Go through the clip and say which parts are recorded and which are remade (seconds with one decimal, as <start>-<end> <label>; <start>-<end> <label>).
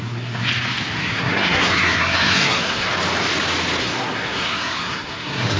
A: 0.0-0.5 remade; 0.5-1.0 recorded; 1.0-2.9 remade; 2.9-3.8 recorded; 3.8-5.6 remade